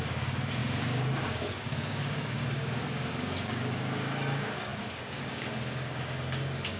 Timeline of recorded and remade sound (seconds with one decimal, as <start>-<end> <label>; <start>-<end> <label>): 0.0-6.8 remade